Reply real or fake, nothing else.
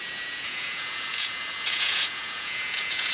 fake